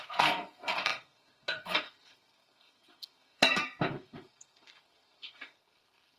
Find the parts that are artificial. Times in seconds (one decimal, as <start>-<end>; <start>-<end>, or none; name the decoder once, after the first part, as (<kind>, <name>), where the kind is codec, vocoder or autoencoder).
0.0-6.2 (codec, SNAC)